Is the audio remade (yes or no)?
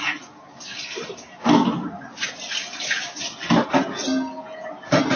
no